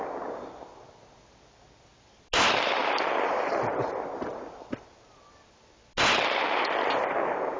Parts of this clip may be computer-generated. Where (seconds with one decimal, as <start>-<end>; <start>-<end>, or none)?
2.8-4.8